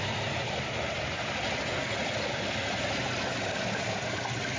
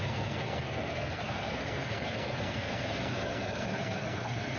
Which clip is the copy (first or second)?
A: second